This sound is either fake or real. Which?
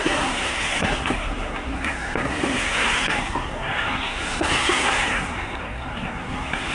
fake